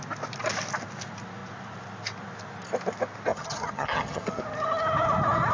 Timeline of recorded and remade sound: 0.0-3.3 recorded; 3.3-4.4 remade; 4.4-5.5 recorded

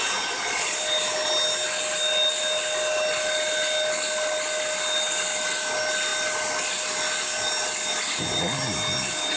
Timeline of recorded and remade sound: 0.0-9.4 recorded

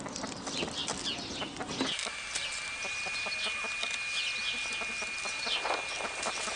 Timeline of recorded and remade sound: 0.0-6.6 recorded